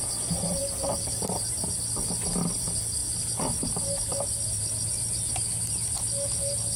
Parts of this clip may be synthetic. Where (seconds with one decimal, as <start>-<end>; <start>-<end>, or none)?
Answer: none